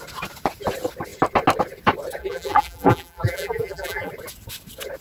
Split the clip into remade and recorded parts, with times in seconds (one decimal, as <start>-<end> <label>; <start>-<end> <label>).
0.0-2.2 recorded; 2.2-4.1 remade; 4.1-5.0 recorded